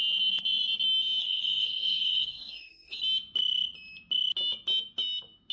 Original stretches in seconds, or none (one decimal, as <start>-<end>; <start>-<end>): 0.0-1.2; 3.0-5.5

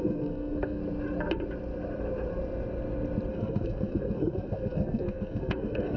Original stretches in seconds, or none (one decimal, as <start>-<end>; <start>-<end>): 0.8-3.3

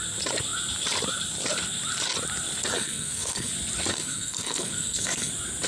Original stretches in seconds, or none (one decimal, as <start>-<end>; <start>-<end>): 0.0-2.7; 3.5-3.9; 5.3-5.7